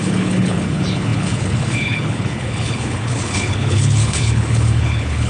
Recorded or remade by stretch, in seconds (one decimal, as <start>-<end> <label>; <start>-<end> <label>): 0.0-5.3 remade